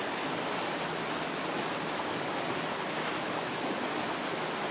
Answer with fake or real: real